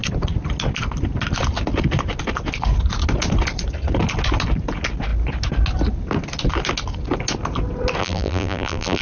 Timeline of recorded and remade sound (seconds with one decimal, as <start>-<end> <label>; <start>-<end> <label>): 0.0-8.0 recorded; 8.0-9.0 remade